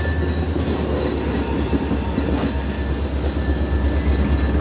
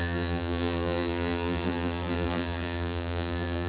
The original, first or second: first